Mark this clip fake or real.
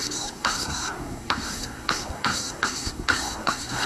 fake